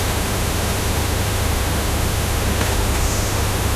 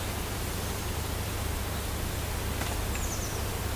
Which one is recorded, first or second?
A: second